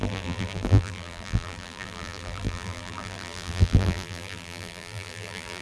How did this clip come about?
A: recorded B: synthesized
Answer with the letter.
B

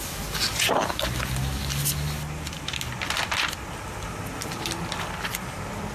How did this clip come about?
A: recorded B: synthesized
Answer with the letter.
A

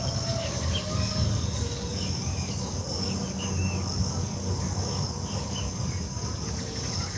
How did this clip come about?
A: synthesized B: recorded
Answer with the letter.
A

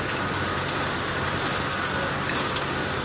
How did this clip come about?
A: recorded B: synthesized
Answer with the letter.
A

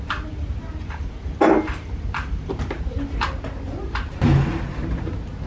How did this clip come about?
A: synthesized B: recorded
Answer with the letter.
B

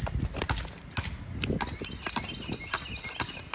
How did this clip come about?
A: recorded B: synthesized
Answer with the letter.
A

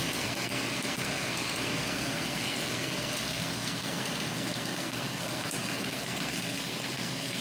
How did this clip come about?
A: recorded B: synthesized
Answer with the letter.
B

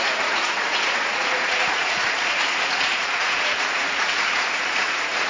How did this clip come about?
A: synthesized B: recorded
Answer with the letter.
A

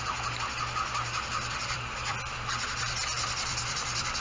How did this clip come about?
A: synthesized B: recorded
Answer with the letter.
A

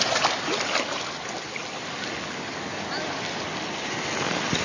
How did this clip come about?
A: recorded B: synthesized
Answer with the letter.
A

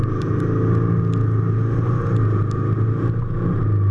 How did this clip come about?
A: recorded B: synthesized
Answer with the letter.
A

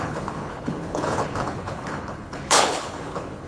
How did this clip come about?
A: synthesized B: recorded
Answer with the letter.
A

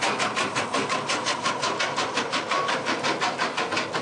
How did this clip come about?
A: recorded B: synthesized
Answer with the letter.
A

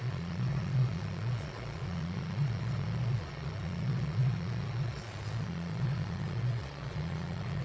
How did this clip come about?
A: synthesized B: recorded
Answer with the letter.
A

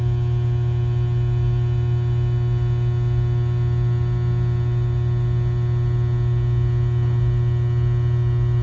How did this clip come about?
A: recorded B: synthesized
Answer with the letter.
A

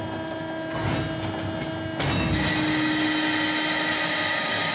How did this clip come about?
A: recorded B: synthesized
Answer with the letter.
A